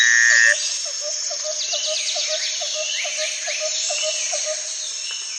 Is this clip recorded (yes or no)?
yes